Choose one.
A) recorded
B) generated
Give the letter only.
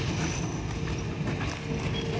A